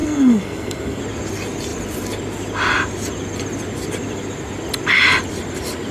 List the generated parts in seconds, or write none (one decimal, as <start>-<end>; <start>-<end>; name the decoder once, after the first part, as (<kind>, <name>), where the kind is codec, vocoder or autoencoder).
0.0-1.0 (codec, SNAC)